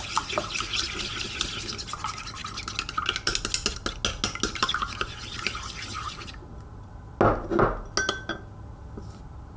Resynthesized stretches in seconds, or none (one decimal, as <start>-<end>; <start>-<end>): none